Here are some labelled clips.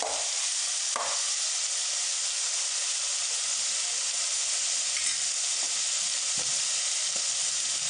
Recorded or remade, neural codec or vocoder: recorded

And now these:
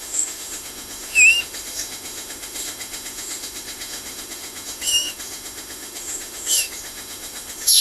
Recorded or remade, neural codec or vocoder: remade, autoencoder, DAC-VAE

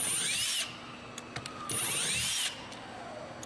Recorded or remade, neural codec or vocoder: recorded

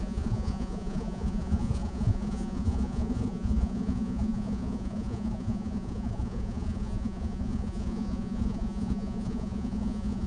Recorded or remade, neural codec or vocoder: remade, vocoder, Vocos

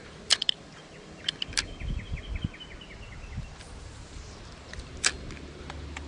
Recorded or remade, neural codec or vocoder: recorded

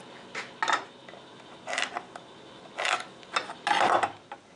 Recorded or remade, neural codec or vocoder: recorded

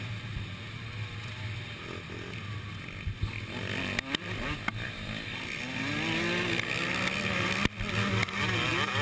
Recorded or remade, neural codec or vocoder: recorded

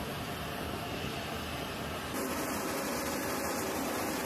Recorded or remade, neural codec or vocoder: recorded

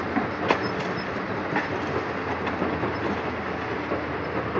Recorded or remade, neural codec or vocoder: recorded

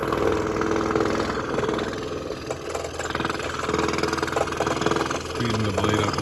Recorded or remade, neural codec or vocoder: recorded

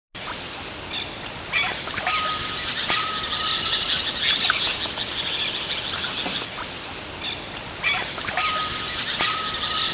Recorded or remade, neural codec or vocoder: recorded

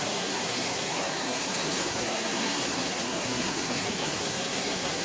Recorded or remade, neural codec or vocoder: remade, codec, SNAC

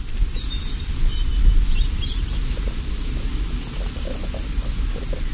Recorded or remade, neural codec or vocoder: recorded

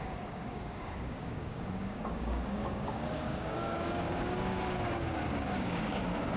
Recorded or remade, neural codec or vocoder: remade, codec, DAC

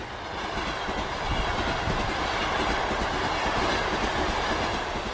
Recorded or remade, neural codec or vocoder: recorded